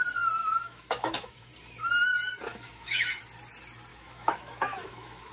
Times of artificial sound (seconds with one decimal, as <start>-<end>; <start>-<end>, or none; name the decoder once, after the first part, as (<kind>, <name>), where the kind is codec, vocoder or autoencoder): 0.4-1.5 (autoencoder, DAC-VAE); 2.5-3.1; 3.9-5.3